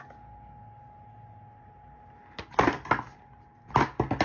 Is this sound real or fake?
real